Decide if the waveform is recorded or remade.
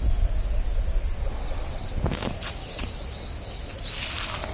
recorded